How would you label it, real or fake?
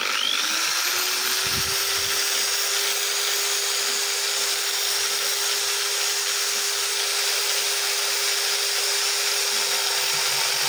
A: real